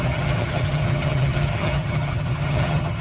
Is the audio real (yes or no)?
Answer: no